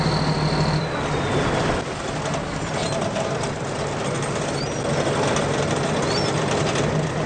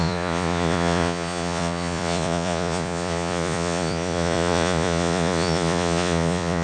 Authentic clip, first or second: first